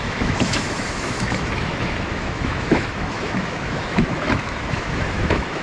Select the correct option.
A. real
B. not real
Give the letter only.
B